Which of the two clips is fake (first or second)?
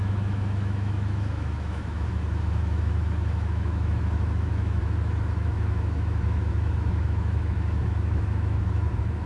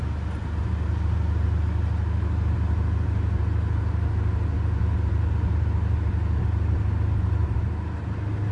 first